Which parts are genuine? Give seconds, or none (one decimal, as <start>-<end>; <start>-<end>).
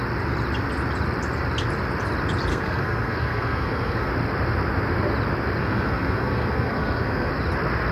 0.0-2.5; 4.1-5.6; 7.3-7.9